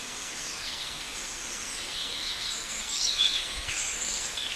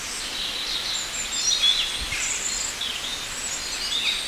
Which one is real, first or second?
second